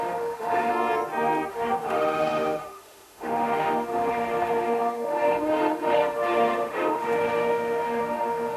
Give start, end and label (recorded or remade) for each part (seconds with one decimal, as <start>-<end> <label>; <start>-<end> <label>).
0.0-0.7 remade; 0.7-1.5 recorded; 1.5-8.6 remade